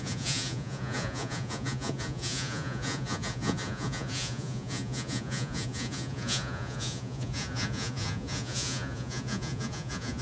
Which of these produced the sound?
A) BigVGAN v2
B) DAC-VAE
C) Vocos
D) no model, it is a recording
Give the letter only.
C